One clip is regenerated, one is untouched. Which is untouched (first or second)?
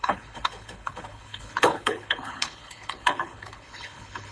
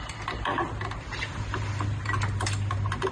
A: second